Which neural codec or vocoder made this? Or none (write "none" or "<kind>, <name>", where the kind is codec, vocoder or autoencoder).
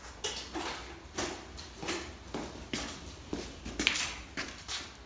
none